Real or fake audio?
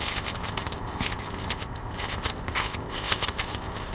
fake